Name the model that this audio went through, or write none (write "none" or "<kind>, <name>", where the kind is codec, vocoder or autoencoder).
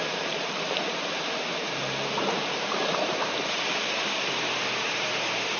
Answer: vocoder, BigVGAN v2